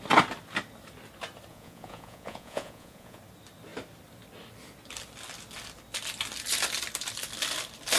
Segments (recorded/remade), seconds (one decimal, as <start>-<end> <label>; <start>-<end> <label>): 0.0-1.5 recorded; 1.5-3.2 remade; 3.2-8.0 recorded

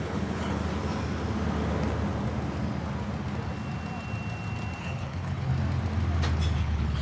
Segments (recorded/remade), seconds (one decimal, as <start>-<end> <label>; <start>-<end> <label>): 0.0-0.6 remade; 0.6-4.8 recorded; 4.8-5.5 remade; 5.5-6.6 recorded; 6.6-7.0 remade

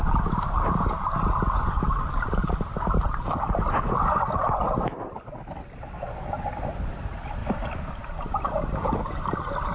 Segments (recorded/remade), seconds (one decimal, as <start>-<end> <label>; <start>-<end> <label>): 0.0-9.7 recorded

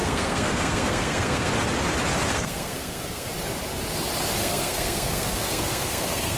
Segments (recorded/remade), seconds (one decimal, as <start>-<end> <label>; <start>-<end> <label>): 0.0-1.5 remade; 1.5-2.3 recorded; 2.3-3.3 remade; 3.3-4.4 recorded; 4.4-6.4 remade